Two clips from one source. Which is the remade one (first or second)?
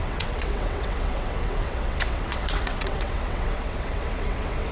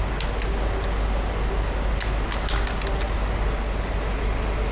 first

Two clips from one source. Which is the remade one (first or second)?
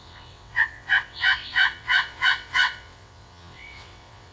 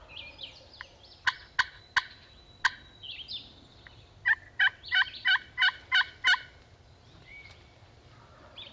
first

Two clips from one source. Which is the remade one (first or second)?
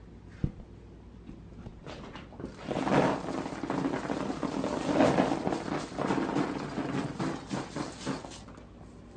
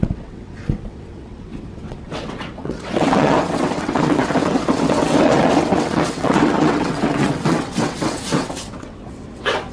second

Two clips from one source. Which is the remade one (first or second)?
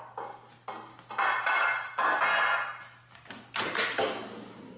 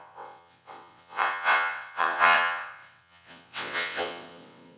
second